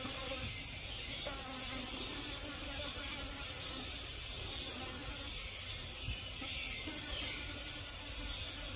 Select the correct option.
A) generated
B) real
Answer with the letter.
B